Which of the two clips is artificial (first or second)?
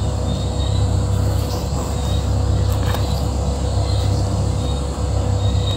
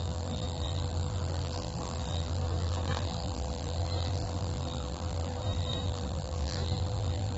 second